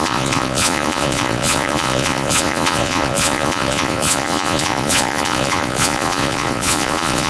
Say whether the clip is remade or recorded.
remade